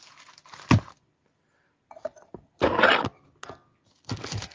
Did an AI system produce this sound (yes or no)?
no